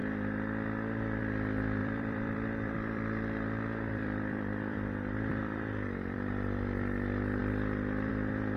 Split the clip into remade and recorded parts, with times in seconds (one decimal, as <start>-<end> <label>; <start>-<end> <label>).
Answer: 0.0-1.8 recorded; 1.8-6.3 remade; 6.3-8.6 recorded